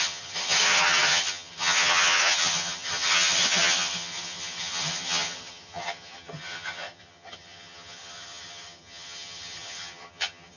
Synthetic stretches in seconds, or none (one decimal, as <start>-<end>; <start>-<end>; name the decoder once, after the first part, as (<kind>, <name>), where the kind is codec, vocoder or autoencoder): 0.0-10.6 (vocoder, HiFi-GAN)